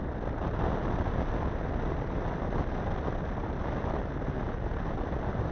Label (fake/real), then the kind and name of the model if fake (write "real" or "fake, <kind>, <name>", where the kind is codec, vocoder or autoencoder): real